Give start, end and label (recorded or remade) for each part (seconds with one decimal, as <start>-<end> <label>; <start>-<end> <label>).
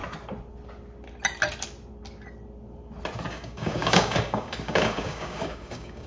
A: 0.0-3.3 recorded; 3.3-6.1 remade